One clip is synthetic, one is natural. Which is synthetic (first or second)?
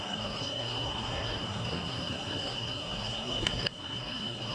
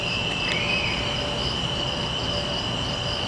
first